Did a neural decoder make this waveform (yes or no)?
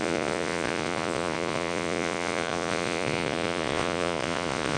yes